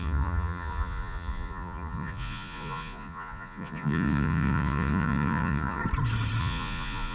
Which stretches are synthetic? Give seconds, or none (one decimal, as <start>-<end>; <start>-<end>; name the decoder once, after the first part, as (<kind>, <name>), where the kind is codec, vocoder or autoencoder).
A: 0.0-5.8 (vocoder, Vocos); 6.4-7.1

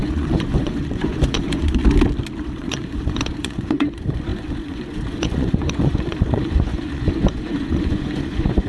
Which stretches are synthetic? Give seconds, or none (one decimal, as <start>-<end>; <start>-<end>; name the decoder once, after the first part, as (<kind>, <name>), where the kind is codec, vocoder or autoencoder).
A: 0.0-1.8 (vocoder, Vocos); 2.4-8.7

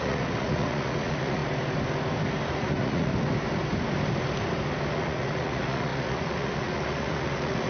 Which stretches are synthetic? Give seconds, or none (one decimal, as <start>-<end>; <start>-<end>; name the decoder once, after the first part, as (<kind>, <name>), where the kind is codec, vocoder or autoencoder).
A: 0.0-1.4 (vocoder, Vocos); 2.6-3.1; 4.9-7.7

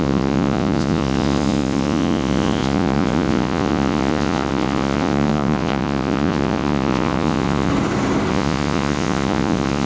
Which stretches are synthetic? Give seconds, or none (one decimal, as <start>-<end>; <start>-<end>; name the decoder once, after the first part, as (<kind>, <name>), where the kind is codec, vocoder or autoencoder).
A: 0.0-7.7 (vocoder, Vocos); 8.3-9.9

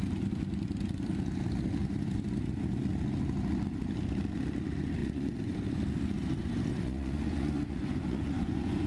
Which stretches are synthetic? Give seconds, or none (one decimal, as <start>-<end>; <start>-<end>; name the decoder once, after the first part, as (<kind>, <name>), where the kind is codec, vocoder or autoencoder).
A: 5.0-5.6 (vocoder, Vocos); 6.7-8.9

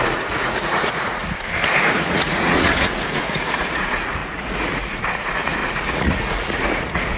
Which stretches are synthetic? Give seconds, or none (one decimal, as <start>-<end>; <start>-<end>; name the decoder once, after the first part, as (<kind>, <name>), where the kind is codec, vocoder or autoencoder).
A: 0.0-1.2 (vocoder, Vocos); 1.8-7.2

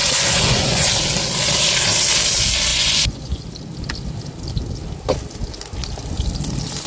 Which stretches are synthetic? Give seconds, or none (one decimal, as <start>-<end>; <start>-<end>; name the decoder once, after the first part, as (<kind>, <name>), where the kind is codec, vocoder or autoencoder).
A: 0.0-0.9 (vocoder, Vocos); 2.7-3.4